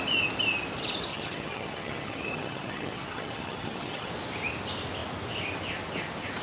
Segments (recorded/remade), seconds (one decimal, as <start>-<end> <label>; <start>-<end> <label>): 0.0-1.1 recorded; 1.1-4.1 remade; 4.1-6.4 recorded

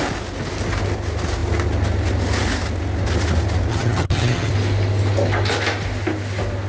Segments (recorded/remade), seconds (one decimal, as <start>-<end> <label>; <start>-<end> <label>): 0.0-3.7 recorded; 3.7-4.5 remade; 4.5-6.7 recorded

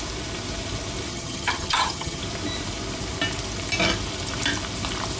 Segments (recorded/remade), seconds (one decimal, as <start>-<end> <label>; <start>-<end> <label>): 0.0-1.1 recorded; 1.1-2.2 remade; 2.2-5.2 recorded

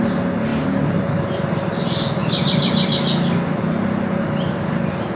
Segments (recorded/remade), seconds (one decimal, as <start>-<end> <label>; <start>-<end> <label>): 0.0-5.2 recorded

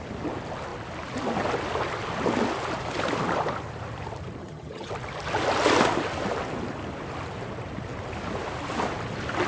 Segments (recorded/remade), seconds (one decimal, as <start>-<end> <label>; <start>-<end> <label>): 0.0-4.4 recorded; 4.4-4.9 remade; 4.9-9.5 recorded